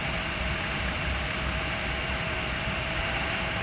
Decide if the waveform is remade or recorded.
recorded